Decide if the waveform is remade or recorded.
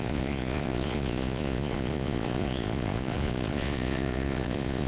remade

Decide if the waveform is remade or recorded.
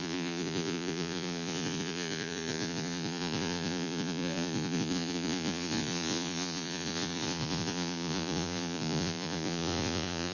remade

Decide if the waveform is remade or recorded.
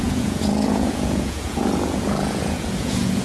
remade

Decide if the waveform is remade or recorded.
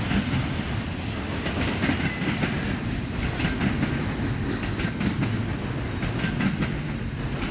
recorded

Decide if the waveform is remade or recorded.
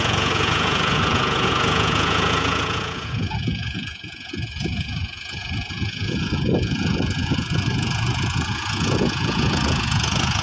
remade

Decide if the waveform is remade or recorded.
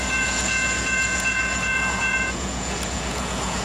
remade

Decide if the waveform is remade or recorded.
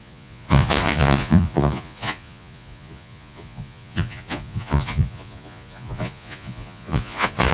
remade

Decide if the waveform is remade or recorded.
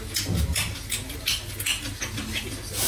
recorded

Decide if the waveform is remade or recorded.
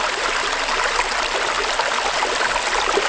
recorded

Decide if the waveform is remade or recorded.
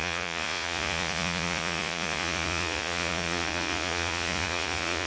remade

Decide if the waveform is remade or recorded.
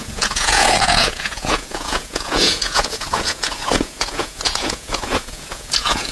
remade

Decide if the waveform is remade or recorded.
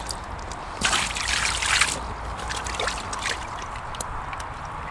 recorded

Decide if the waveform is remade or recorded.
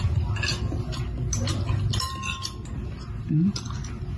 recorded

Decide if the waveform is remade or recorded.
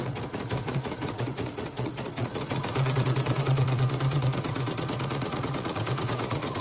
remade